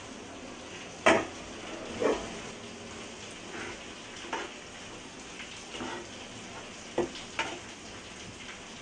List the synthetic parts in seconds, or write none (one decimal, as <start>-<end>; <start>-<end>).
none